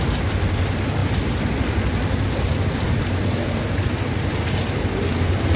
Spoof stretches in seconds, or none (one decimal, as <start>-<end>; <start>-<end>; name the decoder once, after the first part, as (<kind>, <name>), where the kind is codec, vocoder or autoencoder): none